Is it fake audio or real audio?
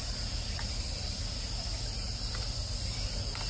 real